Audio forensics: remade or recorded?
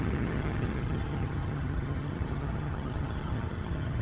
remade